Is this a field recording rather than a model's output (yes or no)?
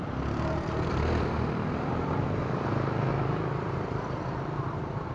no